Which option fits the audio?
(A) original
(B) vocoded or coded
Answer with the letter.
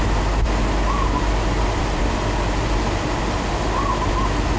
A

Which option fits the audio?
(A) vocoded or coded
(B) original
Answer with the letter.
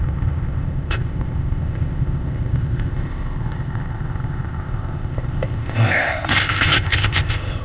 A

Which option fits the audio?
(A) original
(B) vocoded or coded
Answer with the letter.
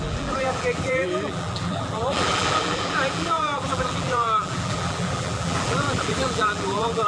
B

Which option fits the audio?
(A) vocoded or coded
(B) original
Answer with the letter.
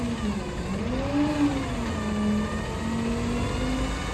B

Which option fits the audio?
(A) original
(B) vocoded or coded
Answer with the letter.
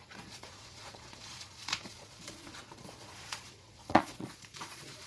B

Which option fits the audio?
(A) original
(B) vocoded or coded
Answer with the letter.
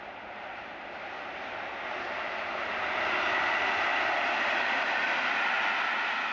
A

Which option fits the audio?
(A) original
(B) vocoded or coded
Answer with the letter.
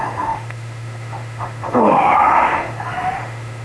B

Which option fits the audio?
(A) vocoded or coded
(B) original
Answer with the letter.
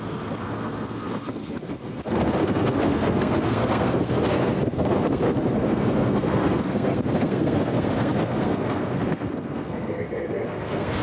A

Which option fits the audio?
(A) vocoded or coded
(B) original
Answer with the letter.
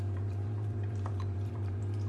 A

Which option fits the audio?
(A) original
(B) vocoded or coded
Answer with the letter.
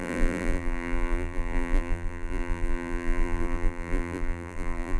B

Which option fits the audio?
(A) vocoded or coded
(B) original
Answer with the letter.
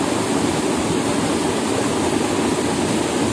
B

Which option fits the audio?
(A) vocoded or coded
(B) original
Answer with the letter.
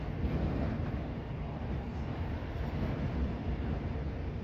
A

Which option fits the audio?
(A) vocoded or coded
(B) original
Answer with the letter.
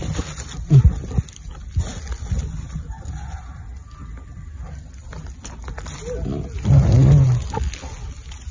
B